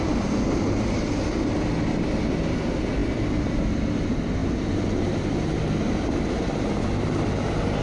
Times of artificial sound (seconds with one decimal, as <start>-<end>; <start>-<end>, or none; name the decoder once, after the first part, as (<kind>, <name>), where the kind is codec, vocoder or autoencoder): none